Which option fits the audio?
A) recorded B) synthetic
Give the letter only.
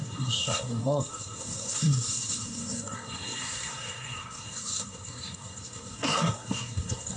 B